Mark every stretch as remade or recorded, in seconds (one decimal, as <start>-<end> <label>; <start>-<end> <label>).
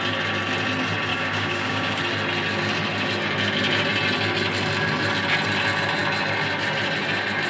0.0-1.1 recorded; 1.1-2.0 remade; 2.0-7.5 recorded